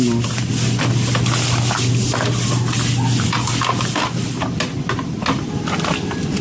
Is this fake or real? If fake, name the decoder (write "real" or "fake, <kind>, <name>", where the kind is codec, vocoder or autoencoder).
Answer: real